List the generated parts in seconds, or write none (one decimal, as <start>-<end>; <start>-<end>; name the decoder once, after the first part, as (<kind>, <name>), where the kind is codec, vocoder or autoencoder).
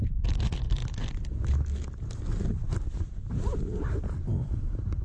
0.0-0.8 (vocoder, BigVGAN v2); 2.9-5.0